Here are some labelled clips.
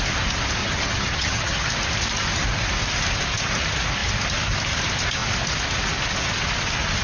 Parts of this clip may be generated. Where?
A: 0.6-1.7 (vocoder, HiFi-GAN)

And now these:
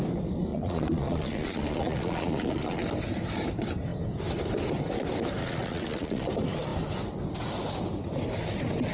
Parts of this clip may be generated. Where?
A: 0.5-2.8 (vocoder, Vocos); 5.4-6.3

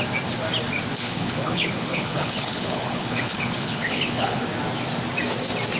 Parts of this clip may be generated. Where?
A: 0.9-4.4 (codec, HILCodec)

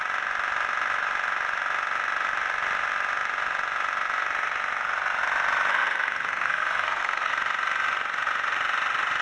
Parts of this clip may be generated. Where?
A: 5.7-7.3 (codec, SNAC)

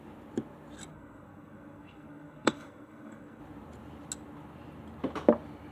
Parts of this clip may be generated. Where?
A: 0.9-3.4 (codec, SNAC)

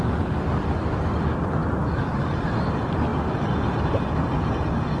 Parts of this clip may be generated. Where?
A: none